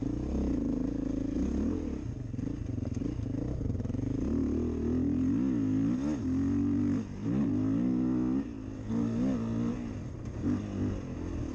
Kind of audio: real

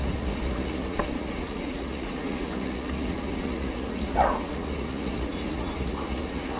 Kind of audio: fake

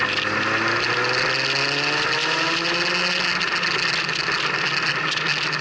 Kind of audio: real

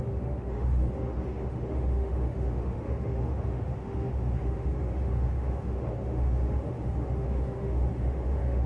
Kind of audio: fake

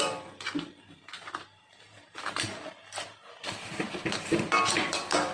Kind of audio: fake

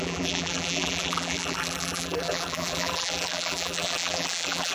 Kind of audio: fake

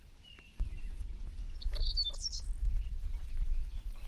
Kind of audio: fake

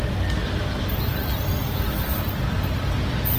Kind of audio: real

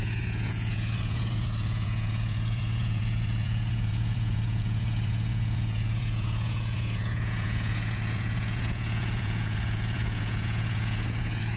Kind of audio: fake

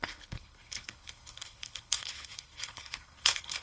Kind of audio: fake